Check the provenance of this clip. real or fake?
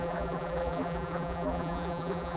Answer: fake